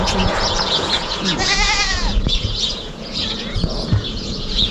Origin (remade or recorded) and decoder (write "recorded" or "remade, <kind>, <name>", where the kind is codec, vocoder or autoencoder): remade, vocoder, Vocos